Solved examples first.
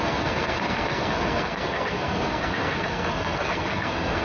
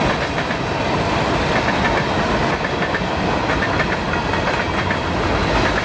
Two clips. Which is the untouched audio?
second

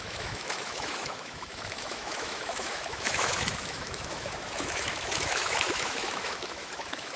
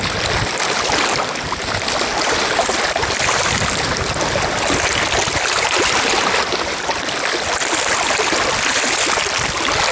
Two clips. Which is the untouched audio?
second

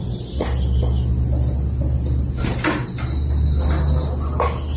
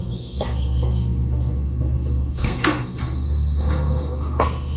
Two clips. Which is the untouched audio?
first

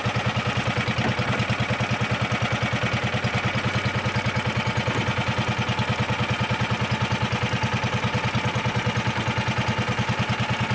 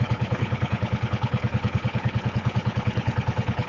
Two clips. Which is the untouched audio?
first